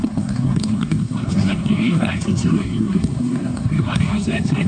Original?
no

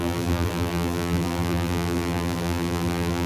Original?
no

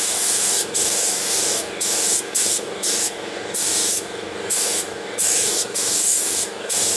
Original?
no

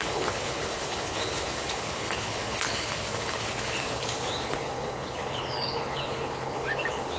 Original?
no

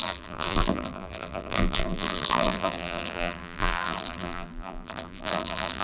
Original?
no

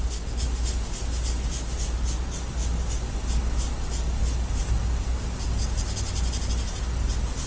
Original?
yes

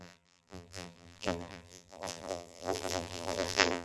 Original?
no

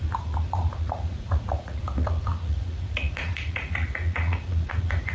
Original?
no